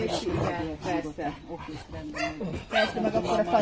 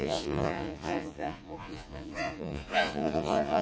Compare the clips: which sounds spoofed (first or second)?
second